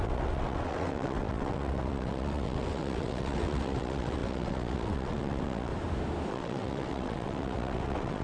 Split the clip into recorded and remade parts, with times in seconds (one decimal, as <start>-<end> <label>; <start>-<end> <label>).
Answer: 0.0-5.7 remade; 5.7-6.3 recorded; 6.3-8.2 remade